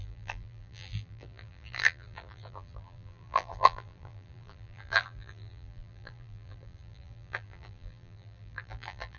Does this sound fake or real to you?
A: fake